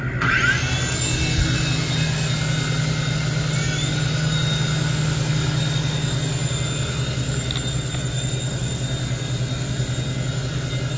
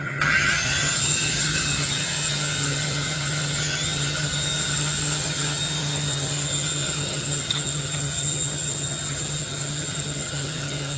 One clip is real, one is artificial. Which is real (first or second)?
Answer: first